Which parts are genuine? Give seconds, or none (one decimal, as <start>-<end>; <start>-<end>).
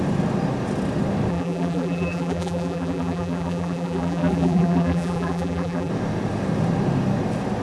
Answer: 0.0-1.3; 5.9-7.6